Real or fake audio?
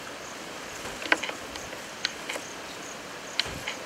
real